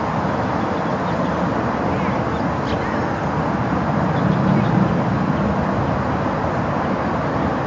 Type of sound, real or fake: real